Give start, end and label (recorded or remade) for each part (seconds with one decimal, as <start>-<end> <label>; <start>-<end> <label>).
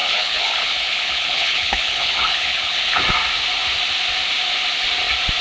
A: 0.0-3.0 remade; 3.0-5.4 recorded